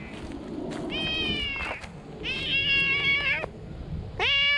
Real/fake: real